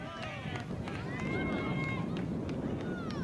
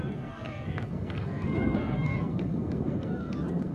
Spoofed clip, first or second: second